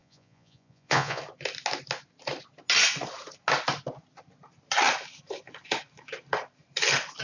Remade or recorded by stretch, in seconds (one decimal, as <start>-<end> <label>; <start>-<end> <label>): 0.0-1.2 remade; 1.2-7.2 recorded